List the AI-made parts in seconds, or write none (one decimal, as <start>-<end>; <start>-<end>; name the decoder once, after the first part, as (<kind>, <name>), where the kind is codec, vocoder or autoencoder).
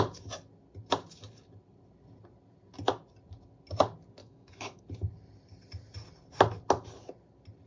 4.2-4.8 (autoencoder, DAC-VAE)